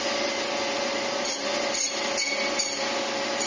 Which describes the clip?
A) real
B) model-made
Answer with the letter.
A